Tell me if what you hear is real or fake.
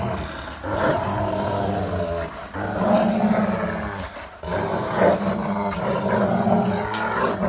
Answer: real